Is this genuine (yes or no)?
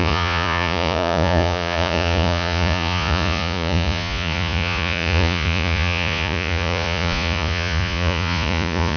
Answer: no